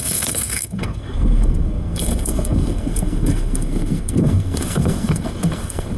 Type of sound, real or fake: fake